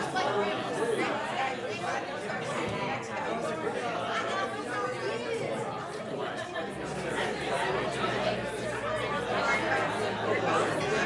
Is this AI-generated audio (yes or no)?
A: no